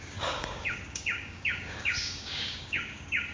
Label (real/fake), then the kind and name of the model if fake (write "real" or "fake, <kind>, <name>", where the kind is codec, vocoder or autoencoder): fake, codec, DAC